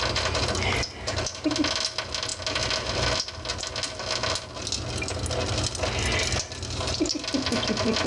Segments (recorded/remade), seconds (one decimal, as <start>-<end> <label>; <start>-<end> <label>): 0.0-8.1 recorded